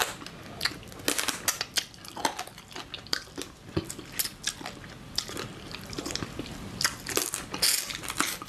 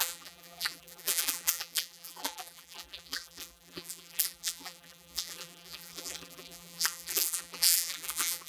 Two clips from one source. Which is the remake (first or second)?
second